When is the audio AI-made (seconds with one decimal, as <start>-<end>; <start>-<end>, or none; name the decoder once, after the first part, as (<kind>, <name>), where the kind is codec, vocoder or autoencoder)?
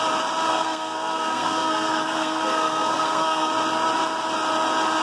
0.5-3.5 (codec, SNAC)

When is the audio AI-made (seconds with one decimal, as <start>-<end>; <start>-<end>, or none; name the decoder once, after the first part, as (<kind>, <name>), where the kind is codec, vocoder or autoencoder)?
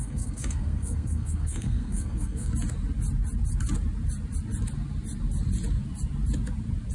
0.0-2.5 (codec, SNAC)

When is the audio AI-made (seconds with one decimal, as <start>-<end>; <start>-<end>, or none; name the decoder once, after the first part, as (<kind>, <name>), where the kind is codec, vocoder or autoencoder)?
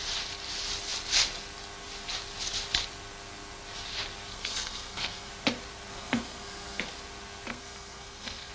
4.3-5.3 (codec, SNAC); 5.9-6.8; 7.5-8.5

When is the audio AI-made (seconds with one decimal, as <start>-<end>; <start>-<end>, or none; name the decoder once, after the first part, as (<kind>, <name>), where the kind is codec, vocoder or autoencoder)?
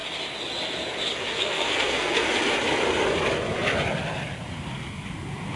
1.2-2.3 (codec, SNAC)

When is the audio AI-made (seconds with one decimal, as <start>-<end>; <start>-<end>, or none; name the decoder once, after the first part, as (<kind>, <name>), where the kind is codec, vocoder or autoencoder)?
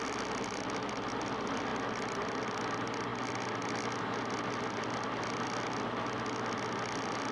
none